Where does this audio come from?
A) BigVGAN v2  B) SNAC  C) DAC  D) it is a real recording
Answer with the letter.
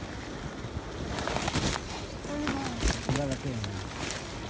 D